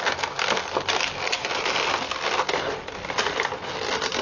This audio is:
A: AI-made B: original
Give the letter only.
B